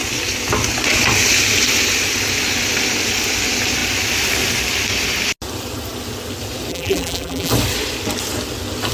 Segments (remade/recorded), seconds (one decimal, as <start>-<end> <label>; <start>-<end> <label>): 0.0-6.7 recorded; 6.7-7.5 remade; 7.5-8.9 recorded